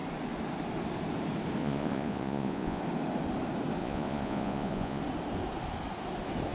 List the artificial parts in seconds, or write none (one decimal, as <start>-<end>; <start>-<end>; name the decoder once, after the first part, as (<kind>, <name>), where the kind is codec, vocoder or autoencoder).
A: 1.6-2.8 (vocoder, Vocos); 3.8-5.0